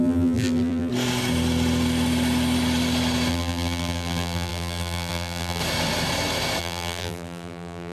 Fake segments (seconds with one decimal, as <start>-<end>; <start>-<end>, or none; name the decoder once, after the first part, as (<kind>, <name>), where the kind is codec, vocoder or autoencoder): 0.0-0.9 (vocoder, BigVGAN v2); 3.3-5.6; 6.6-7.9